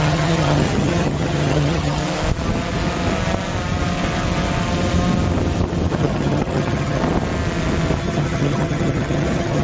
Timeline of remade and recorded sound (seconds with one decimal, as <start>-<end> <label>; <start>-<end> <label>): 0.0-2.0 remade; 2.0-6.0 recorded; 6.0-7.0 remade; 7.0-8.0 recorded; 8.0-9.6 remade